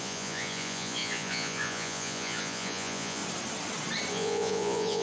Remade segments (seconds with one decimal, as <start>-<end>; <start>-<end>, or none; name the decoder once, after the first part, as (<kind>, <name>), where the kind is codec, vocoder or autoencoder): 0.0-3.2 (vocoder, Vocos); 4.1-5.0